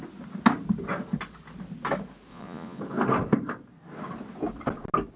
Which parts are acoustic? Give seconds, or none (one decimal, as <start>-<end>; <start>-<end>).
0.0-2.3; 2.8-5.2